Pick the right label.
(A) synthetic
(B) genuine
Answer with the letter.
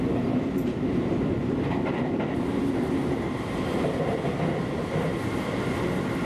B